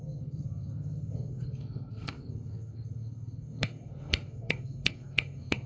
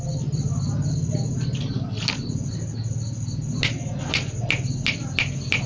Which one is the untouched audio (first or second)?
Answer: second